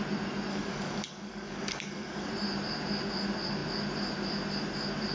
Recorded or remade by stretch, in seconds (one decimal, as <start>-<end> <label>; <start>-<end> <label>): 0.0-0.5 recorded; 0.5-2.3 remade; 2.3-5.1 recorded